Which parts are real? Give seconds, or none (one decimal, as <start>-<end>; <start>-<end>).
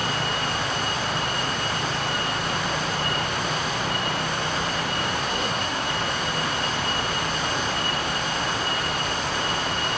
0.0-5.3; 5.9-10.0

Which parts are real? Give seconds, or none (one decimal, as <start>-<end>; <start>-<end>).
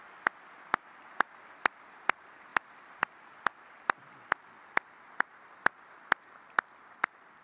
0.0-7.4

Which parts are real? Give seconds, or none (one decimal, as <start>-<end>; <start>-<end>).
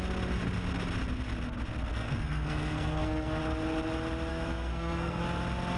0.0-1.9; 3.4-4.3; 5.2-5.8